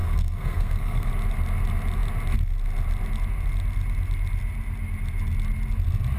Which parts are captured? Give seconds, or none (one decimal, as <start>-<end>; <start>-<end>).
1.1-6.2

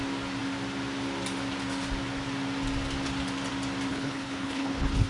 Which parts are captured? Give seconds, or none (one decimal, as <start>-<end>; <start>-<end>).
0.0-3.9